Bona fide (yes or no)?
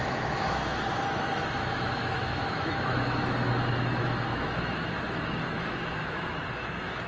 no